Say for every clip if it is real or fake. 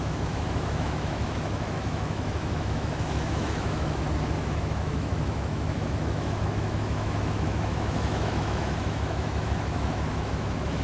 fake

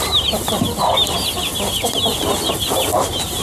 real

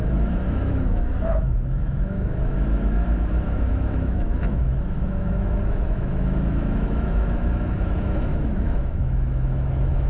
fake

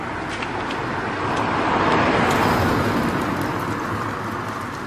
real